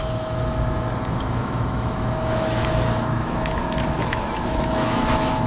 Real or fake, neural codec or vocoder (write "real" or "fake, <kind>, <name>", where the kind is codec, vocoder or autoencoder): fake, autoencoder, DAC-VAE